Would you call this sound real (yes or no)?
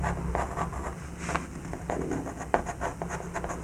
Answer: yes